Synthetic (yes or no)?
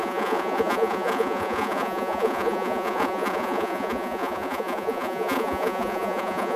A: yes